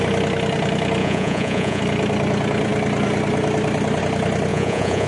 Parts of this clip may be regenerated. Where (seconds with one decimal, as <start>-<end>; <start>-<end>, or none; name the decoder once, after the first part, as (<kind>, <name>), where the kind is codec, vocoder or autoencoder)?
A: 1.0-1.8 (vocoder, Vocos); 4.5-5.1

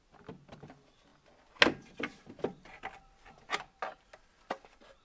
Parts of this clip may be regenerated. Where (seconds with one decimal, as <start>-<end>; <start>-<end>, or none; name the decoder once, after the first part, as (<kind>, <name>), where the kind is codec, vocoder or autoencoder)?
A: none

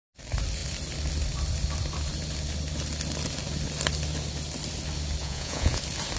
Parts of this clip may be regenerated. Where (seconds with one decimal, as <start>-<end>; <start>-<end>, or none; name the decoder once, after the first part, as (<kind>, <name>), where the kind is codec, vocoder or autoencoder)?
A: 5.2-5.8 (vocoder, Vocos)

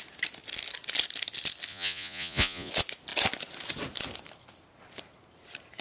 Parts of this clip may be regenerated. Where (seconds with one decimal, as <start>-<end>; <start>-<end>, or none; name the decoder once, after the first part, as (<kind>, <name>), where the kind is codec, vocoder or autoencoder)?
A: 1.7-2.7 (vocoder, Vocos)